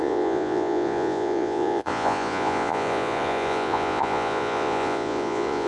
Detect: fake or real fake